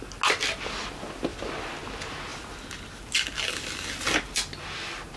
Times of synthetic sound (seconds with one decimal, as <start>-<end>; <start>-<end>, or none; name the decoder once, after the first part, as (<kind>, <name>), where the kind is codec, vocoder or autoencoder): none